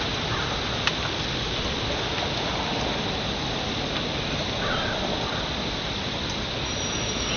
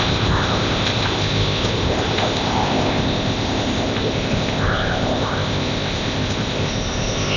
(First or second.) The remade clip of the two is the second